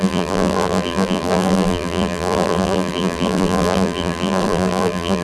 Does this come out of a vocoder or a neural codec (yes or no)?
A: yes